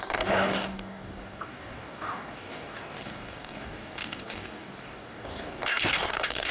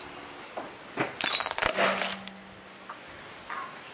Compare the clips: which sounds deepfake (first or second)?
first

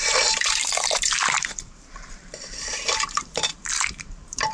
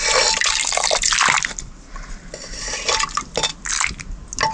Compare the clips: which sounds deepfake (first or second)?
first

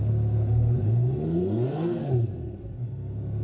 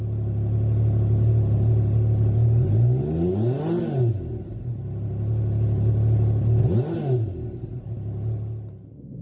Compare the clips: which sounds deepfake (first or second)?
first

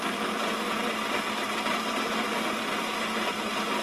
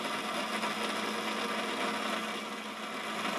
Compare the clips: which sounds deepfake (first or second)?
first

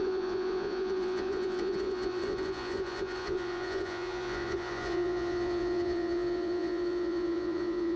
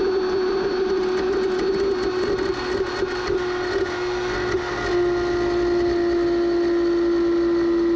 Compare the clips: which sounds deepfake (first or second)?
first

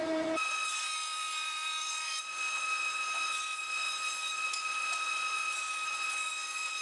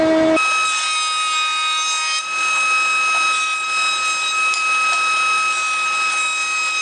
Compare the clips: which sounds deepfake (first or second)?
first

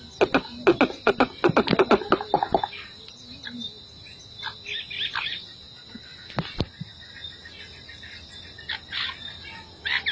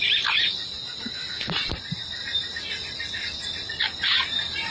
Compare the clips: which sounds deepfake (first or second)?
second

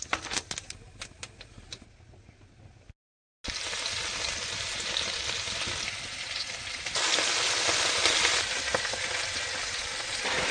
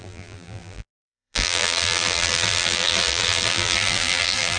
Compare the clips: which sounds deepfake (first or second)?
second